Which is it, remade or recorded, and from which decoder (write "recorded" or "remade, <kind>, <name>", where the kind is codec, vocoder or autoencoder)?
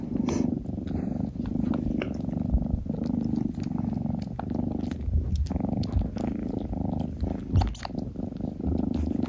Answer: recorded